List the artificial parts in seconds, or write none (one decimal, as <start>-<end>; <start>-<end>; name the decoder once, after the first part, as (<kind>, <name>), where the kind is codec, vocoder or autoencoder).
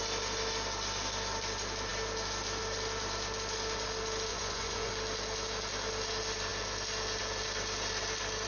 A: 4.3-4.9 (vocoder, Vocos)